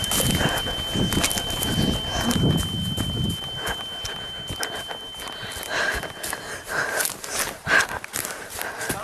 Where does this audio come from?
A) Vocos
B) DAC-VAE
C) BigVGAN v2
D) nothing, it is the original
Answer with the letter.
D